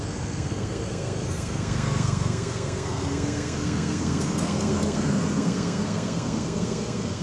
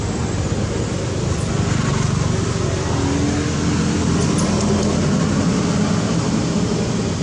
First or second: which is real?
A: second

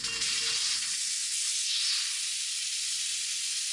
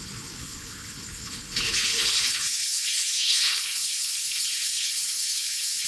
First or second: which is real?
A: first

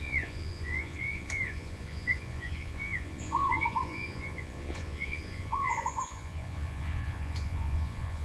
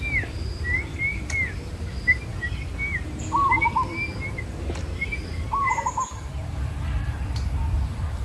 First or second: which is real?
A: second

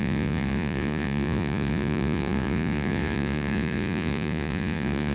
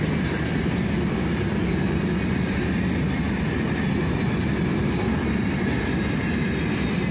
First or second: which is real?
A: second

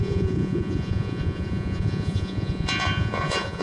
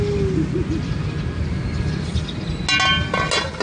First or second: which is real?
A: second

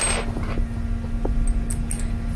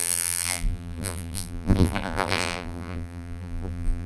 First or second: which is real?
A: first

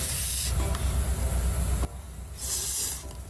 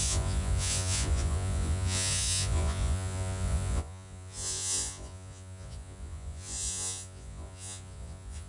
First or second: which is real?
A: first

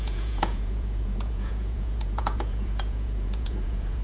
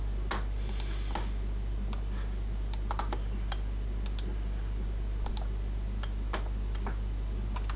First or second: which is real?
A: second